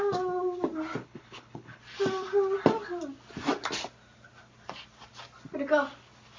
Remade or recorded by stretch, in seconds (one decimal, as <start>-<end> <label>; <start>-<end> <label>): 0.0-1.0 recorded; 1.0-1.8 remade; 1.8-6.4 recorded